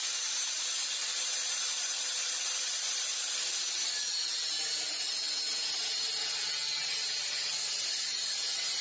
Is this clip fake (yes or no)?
no